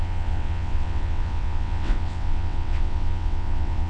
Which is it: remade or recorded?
remade